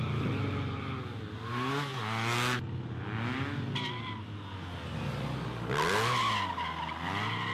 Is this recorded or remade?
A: recorded